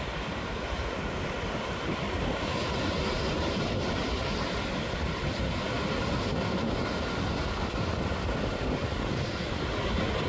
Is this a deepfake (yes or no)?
no